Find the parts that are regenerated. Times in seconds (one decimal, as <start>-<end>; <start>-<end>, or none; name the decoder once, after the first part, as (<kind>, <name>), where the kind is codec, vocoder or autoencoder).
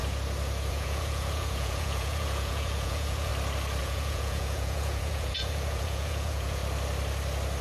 0.7-3.3 (vocoder, Vocos); 3.8-6.6